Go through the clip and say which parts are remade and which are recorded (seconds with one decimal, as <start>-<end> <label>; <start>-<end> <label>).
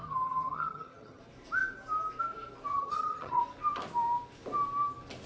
0.0-1.2 remade; 1.2-2.7 recorded; 2.7-3.4 remade; 3.4-5.3 recorded